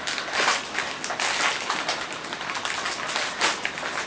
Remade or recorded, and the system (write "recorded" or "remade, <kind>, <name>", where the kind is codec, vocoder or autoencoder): recorded